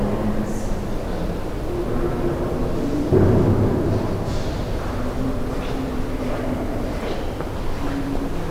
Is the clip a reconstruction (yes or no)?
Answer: no